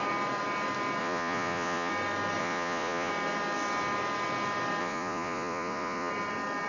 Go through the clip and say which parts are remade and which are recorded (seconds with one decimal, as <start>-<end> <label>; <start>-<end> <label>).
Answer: 0.0-1.0 recorded; 1.0-1.9 remade; 1.9-2.4 recorded; 2.4-3.1 remade; 3.1-4.8 recorded; 4.8-6.1 remade; 6.1-6.7 recorded